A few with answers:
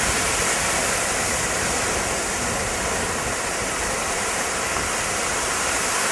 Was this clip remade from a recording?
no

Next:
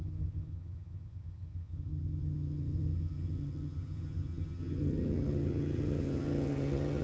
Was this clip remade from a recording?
yes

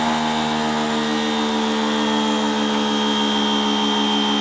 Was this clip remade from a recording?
no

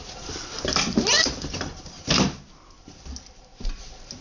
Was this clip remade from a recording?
no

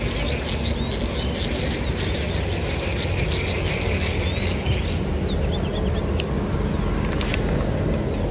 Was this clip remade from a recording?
no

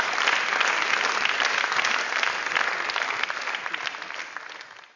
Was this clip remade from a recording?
no